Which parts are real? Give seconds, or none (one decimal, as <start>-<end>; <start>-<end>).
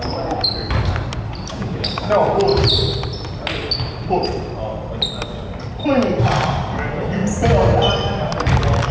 0.0-1.5; 2.1-8.9